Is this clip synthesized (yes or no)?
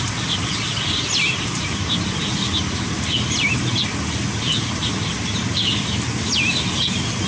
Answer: no